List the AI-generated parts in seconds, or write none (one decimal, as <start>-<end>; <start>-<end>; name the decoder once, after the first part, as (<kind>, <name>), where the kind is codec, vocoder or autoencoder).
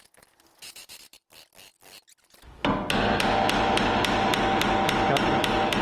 none